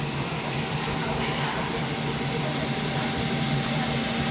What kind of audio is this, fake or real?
real